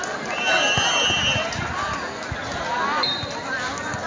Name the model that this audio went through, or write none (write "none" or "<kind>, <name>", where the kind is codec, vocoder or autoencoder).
none